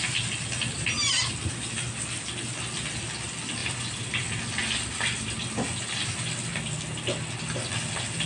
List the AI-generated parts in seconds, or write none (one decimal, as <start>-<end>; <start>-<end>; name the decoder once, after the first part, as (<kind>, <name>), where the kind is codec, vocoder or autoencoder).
3.6-4.2 (vocoder, BigVGAN v2)